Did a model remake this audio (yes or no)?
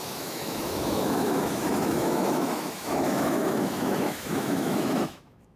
yes